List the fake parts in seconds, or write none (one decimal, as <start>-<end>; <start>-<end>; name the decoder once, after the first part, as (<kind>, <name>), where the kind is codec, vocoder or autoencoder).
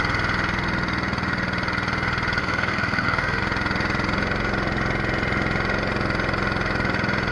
2.4-3.4 (codec, SNAC)